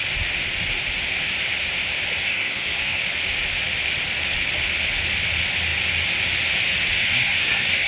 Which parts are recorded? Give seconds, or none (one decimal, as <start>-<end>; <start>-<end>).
0.0-2.2; 3.0-7.0